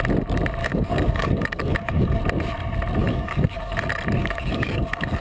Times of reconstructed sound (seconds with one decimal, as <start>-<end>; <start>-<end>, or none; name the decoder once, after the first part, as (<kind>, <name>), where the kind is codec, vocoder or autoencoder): 0.6-2.2 (codec, DAC); 3.0-3.8; 4.2-5.2